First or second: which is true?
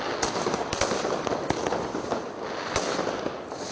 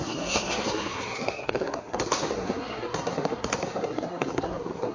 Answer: first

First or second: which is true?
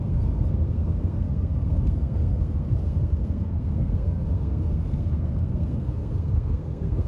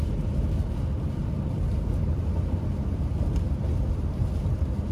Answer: second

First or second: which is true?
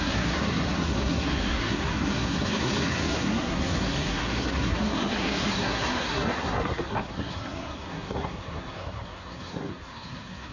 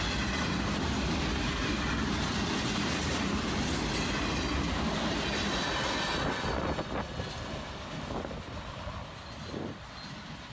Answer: second